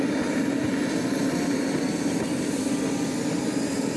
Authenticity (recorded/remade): recorded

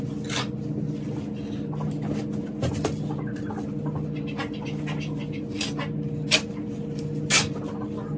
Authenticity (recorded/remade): recorded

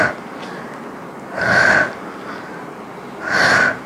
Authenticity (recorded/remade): recorded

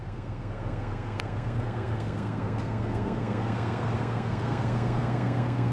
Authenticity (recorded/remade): remade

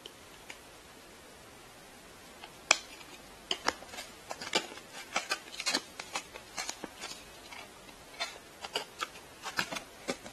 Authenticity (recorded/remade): recorded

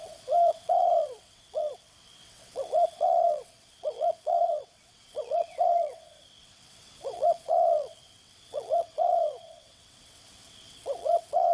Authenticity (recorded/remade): remade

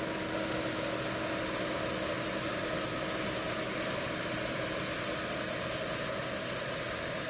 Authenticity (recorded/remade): recorded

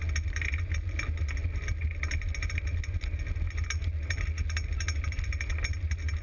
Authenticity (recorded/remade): recorded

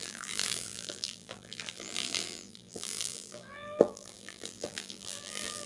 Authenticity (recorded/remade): remade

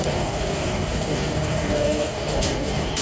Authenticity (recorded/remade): remade